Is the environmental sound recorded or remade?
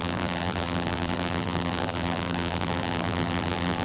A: remade